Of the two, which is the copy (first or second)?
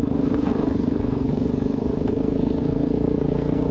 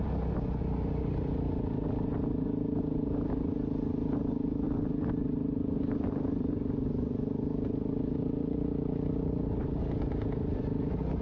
first